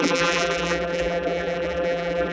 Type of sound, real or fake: fake